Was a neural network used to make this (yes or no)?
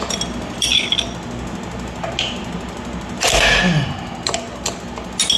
no